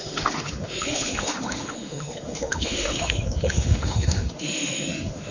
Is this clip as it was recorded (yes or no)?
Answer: no